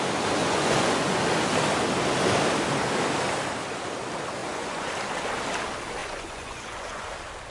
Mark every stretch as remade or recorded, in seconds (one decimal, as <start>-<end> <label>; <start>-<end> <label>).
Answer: 0.0-0.4 recorded; 0.4-1.2 remade; 1.2-4.4 recorded; 4.4-4.9 remade; 4.9-6.0 recorded; 6.0-7.1 remade; 7.1-7.5 recorded